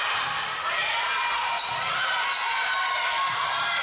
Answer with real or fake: real